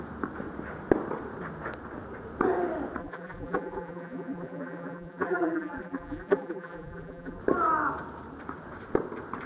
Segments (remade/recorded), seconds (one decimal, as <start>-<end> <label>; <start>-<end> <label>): 0.0-3.0 recorded; 3.0-7.4 remade; 7.4-9.5 recorded